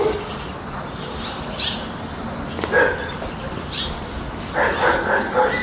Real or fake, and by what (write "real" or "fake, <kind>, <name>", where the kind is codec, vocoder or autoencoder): real